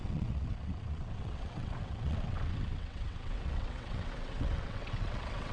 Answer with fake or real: fake